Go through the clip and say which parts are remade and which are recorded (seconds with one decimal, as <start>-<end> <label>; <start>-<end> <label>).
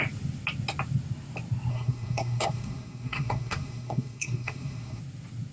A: 0.0-1.7 recorded; 1.7-5.0 remade; 5.0-5.5 recorded